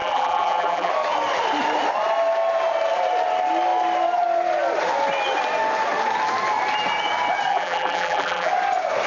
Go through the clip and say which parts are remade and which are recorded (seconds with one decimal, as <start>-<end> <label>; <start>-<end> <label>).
0.0-0.9 remade; 0.9-7.5 recorded; 7.5-8.5 remade; 8.5-9.1 recorded